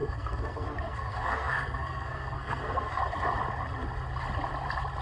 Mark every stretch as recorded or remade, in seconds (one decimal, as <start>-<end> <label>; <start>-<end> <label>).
0.0-3.0 remade; 3.0-5.0 recorded